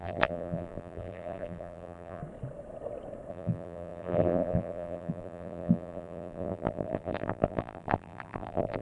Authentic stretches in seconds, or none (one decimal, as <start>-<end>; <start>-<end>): 2.2-3.3